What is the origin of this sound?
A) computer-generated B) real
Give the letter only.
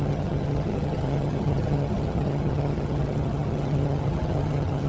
A